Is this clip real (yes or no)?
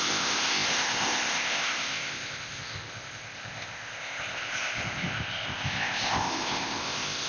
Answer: no